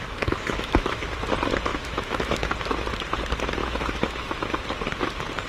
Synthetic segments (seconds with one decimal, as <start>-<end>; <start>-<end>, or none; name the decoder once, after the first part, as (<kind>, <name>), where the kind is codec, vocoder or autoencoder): 0.0-1.0 (autoencoder, DAC-VAE); 1.7-2.5; 3.6-4.6